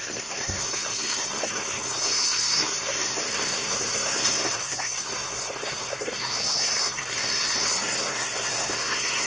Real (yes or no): no